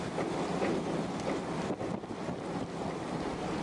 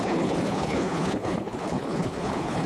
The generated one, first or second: second